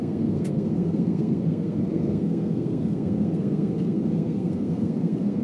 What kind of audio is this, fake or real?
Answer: fake